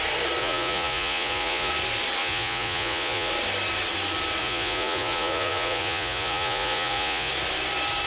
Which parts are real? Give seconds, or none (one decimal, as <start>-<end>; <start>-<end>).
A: 0.0-0.4; 1.7-2.2; 3.3-4.4; 7.3-8.1